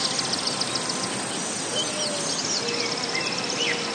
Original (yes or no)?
yes